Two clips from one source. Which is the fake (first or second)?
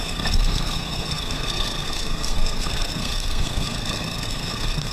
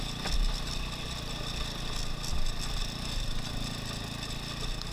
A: first